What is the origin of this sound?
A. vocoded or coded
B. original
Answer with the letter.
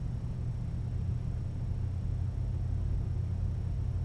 B